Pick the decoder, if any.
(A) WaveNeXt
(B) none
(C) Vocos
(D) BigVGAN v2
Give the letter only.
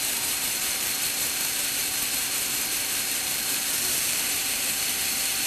D